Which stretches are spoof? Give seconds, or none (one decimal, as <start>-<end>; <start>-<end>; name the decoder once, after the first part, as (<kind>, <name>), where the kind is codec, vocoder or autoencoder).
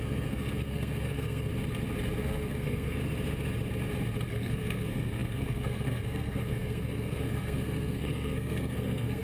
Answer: 0.0-1.5 (codec, SNAC); 2.2-3.0; 4.3-9.2